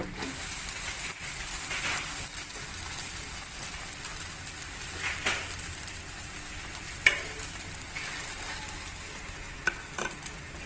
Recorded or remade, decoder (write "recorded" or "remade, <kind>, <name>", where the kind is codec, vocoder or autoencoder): recorded